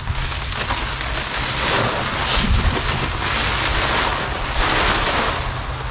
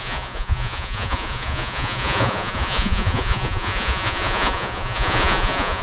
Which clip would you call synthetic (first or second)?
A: second